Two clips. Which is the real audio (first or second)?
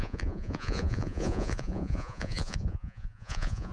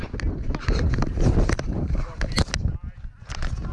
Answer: second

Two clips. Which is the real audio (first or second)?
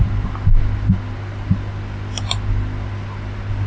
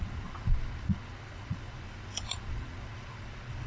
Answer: first